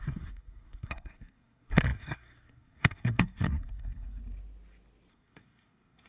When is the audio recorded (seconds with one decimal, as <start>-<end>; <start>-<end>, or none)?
4.2-5.1